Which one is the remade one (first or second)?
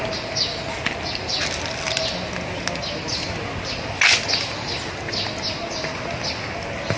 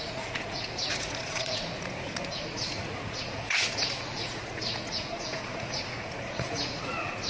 second